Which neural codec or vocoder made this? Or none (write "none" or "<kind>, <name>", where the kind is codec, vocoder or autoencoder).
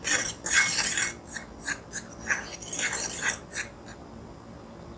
none